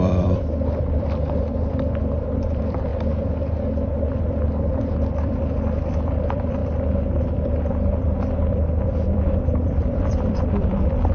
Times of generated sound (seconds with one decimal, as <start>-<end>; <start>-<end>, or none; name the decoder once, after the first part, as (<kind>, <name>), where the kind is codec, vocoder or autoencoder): 0.0-2.9 (vocoder, BigVGAN v2); 4.2-6.6; 7.1-11.1